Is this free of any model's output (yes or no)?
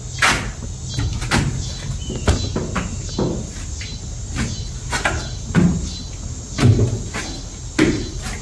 yes